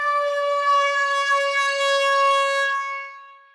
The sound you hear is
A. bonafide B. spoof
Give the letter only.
B